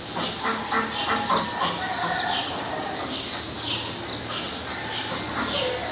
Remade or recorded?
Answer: recorded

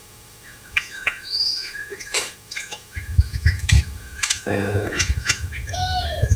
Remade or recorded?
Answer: remade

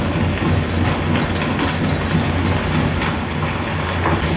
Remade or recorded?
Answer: recorded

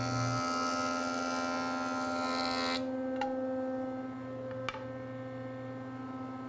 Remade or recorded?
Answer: recorded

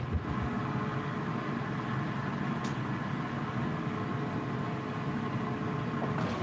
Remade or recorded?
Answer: recorded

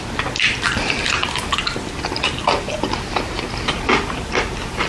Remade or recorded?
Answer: recorded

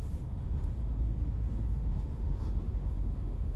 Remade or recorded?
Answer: remade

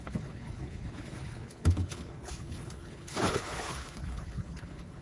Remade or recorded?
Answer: remade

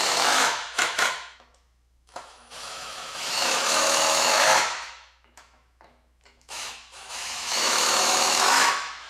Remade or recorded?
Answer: remade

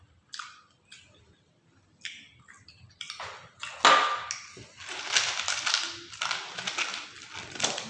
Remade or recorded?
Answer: recorded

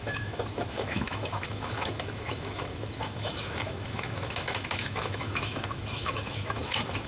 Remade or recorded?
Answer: remade